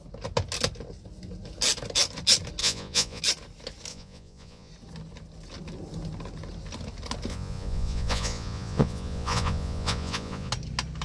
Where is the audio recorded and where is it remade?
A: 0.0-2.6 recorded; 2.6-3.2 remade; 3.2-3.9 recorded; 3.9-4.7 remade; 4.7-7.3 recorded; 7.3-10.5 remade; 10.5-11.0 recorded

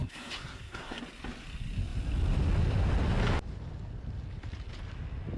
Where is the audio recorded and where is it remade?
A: 0.0-1.0 remade; 1.0-5.4 recorded

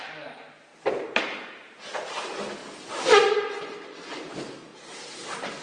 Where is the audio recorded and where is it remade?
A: 0.0-0.7 recorded; 0.7-1.2 remade; 1.2-4.7 recorded; 4.7-5.6 remade